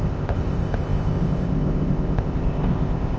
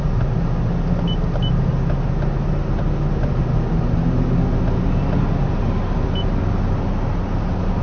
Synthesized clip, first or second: first